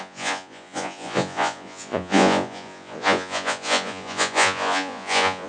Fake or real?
fake